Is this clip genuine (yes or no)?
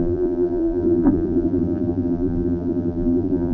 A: no